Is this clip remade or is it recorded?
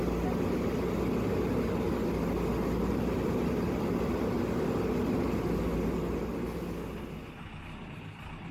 recorded